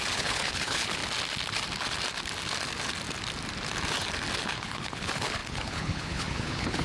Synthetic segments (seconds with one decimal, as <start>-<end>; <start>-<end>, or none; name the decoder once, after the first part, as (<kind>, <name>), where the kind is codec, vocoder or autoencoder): 0.0-1.0 (codec, HILCodec); 4.4-6.8